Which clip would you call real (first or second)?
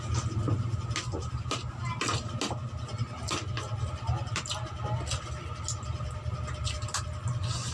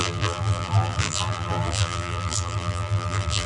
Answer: first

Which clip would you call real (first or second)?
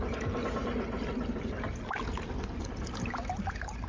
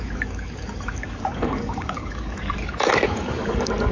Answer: first